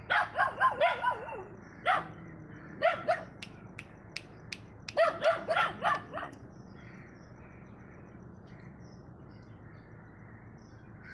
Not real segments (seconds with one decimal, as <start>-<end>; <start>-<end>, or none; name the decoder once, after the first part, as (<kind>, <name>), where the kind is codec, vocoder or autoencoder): 2.6-3.4 (vocoder, Vocos); 6.1-9.3